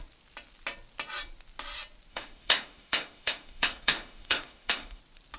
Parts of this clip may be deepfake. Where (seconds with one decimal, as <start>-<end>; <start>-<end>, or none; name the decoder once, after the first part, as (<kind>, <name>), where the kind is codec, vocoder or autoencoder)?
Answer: 2.1-5.0 (autoencoder, DAC-VAE)